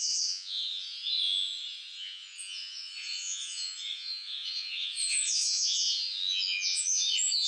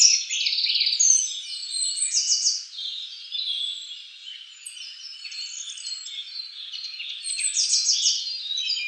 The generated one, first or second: first